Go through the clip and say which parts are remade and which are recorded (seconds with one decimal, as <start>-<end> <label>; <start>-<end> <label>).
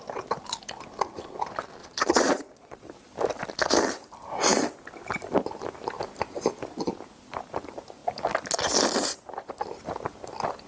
0.0-1.8 recorded; 1.8-2.8 remade; 2.8-10.7 recorded